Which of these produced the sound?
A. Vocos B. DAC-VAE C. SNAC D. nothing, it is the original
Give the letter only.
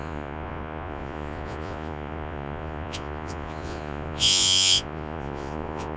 A